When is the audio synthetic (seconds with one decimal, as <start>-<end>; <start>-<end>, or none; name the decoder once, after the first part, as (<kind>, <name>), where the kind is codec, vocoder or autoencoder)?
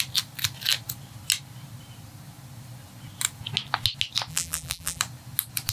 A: 4.3-5.0 (vocoder, BigVGAN v2)